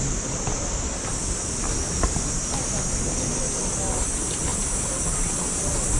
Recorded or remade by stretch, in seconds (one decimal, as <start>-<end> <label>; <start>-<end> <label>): 0.0-6.0 recorded